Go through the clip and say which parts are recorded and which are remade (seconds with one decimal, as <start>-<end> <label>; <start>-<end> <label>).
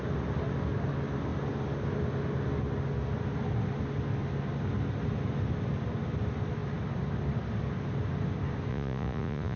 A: 0.0-8.7 recorded; 8.7-9.6 remade